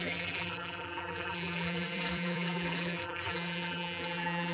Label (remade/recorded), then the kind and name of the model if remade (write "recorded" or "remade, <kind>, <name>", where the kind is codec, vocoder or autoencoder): remade, vocoder, BigVGAN v2